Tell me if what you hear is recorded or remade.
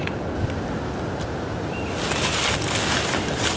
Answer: recorded